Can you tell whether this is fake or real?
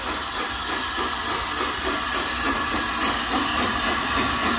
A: real